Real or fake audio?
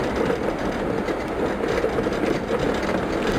real